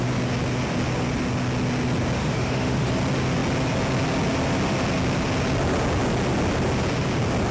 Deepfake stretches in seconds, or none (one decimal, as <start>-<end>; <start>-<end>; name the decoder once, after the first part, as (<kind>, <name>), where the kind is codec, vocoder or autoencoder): 2.2-2.9 (autoencoder, DAC-VAE)